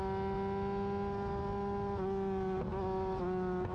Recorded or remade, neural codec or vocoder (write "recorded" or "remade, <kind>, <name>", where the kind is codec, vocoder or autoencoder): recorded